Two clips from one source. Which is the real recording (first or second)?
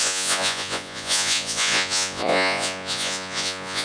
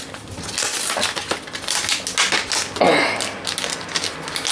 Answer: second